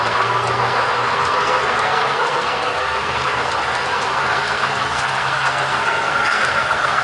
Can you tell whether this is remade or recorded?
remade